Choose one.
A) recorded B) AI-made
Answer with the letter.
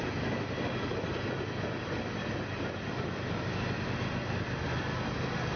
A